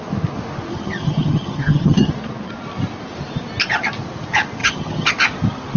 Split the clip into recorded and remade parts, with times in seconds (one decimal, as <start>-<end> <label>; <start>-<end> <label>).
0.0-0.7 recorded; 0.7-2.1 remade; 2.1-4.6 recorded; 4.6-5.1 remade; 5.1-5.8 recorded